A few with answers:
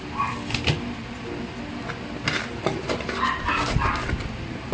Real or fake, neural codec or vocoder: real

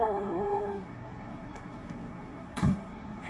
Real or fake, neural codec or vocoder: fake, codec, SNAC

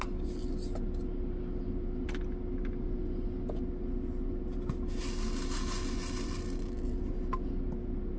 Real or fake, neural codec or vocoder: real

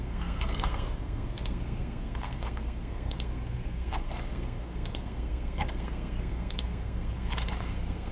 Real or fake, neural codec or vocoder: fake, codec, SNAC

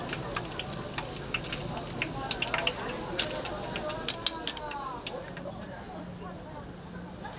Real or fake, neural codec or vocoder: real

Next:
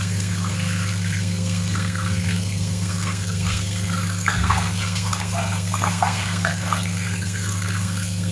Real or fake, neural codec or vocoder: fake, codec, SNAC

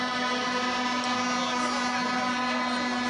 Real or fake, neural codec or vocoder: real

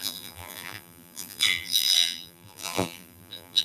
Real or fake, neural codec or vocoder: fake, vocoder, BigVGAN v2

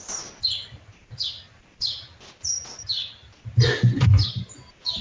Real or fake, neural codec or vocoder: real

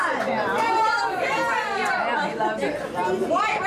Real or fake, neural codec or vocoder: real